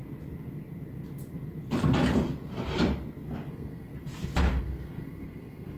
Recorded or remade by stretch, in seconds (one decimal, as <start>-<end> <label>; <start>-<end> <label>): 0.0-3.5 recorded; 3.5-3.9 remade; 3.9-4.6 recorded; 4.6-5.8 remade